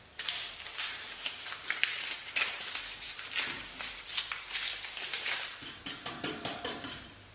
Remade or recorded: remade